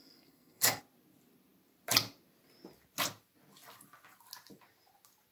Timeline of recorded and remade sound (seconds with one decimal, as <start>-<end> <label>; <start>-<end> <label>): 0.0-0.8 remade; 0.8-5.3 recorded